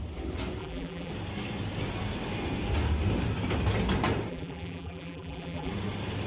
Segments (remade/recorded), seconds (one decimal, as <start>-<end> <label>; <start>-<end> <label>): 0.0-0.6 recorded; 0.6-1.1 remade; 1.1-4.3 recorded; 4.3-5.7 remade; 5.7-6.3 recorded